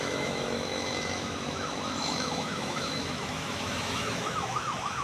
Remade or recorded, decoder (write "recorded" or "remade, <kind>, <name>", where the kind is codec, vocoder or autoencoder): remade, autoencoder, DAC-VAE